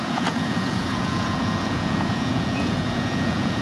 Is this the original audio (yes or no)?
no